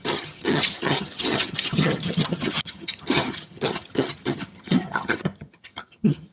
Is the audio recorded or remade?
remade